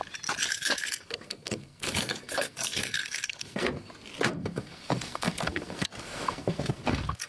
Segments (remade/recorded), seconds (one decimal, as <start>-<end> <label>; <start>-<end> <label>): 0.0-0.5 recorded; 0.5-3.9 remade; 3.9-4.3 recorded; 4.3-7.3 remade